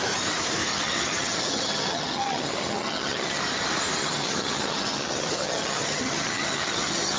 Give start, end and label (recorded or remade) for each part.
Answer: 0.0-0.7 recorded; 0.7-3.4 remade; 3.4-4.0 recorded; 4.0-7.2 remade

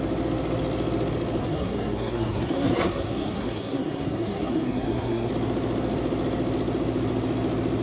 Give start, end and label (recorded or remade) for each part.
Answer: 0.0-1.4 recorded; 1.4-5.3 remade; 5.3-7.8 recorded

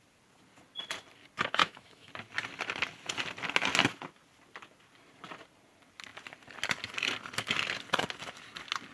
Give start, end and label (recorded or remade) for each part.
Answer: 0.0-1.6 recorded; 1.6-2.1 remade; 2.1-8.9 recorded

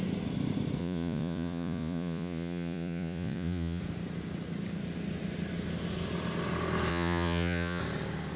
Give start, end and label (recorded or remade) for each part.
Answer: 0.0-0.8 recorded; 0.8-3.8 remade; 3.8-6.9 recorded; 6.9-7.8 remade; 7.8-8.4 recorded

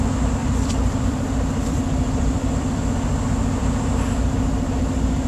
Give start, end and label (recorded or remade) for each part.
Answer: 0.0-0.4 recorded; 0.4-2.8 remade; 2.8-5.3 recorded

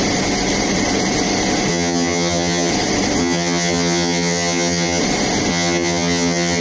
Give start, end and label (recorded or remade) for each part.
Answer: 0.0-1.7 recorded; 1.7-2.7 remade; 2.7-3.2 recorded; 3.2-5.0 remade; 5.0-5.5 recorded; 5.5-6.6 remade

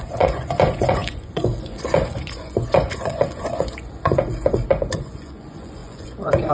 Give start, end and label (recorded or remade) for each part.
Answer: 0.0-6.5 remade

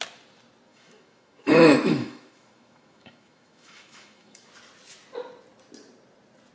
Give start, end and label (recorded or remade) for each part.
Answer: 0.0-0.7 recorded; 0.7-4.5 remade; 4.5-6.5 recorded